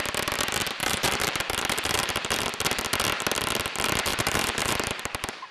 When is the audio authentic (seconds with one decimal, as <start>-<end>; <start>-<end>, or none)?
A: 0.0-0.8; 2.5-4.1